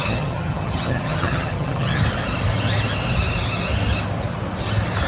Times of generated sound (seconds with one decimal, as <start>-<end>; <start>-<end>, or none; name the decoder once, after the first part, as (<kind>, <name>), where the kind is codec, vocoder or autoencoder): 0.0-2.0 (vocoder, HiFi-GAN)